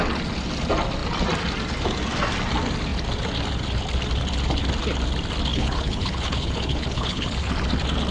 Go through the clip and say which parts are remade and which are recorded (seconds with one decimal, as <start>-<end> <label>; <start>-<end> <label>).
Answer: 0.0-5.5 recorded; 5.5-7.5 remade; 7.5-8.1 recorded